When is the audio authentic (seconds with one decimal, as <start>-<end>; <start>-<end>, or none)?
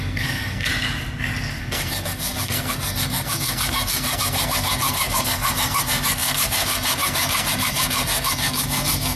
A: 0.7-1.6